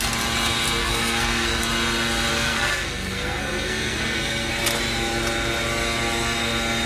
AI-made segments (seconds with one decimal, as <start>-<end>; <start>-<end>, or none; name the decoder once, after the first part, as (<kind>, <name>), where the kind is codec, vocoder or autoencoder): 0.8-1.6 (codec, SNAC); 2.3-4.5